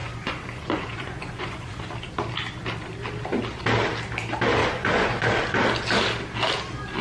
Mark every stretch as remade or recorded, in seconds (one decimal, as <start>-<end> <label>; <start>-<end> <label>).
0.0-1.9 remade; 1.9-4.6 recorded; 4.6-5.3 remade; 5.3-7.0 recorded